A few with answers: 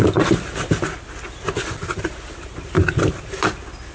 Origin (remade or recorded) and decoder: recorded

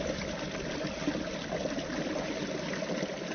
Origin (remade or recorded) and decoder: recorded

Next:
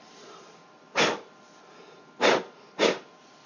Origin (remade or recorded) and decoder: recorded